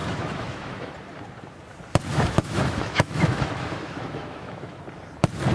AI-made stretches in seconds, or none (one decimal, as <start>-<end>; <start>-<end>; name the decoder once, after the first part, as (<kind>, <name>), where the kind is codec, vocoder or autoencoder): 0.0-0.9 (autoencoder, DAC-VAE); 2.1-4.8